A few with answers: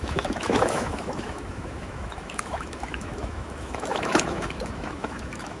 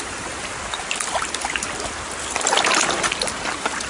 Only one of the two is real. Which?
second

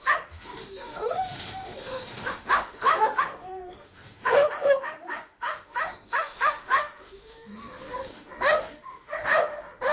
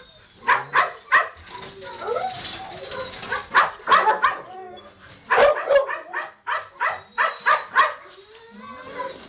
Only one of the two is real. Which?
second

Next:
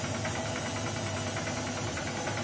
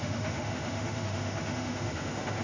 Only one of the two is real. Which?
first